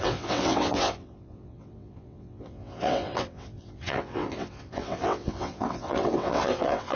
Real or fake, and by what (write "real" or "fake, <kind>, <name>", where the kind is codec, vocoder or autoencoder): fake, vocoder, WaveNeXt